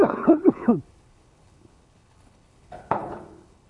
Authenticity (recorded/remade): remade